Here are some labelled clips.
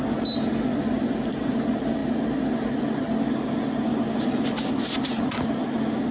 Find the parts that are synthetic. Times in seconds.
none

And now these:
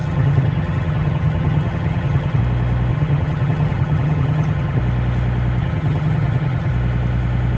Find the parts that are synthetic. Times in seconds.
0.0-2.4 (vocoder, HiFi-GAN); 2.9-4.8; 5.6-6.7